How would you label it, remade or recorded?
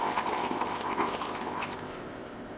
remade